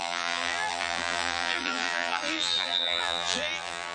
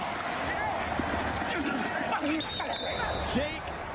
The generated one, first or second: first